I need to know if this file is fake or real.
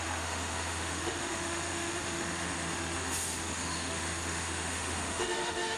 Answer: fake